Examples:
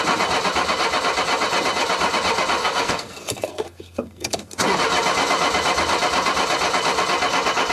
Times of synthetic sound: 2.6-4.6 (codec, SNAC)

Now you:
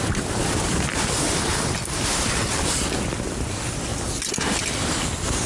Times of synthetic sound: none

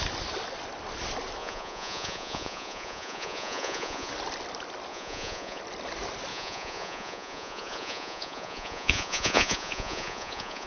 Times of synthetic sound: 1.4-4.1 (vocoder, Vocos); 4.9-5.6; 6.3-10.7

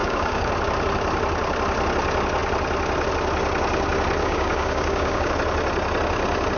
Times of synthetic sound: 0.0-0.5 (codec, DAC); 4.2-5.3

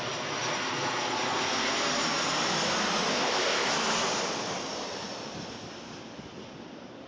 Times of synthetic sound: 3.1-3.7 (codec, ZipCodec)

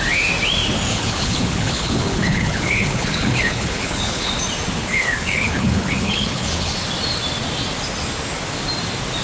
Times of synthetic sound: 0.9-4.3 (codec, HILCodec); 4.8-6.7

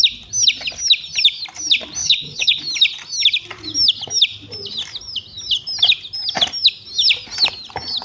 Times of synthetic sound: 2.0-2.6 (codec, HILCodec)

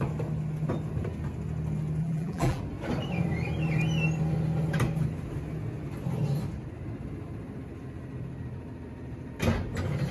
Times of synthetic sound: 2.0-2.6 (vocoder, BigVGAN v2)